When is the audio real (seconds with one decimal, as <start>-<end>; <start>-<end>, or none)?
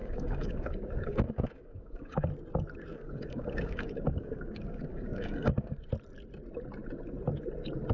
2.3-2.9; 5.7-7.9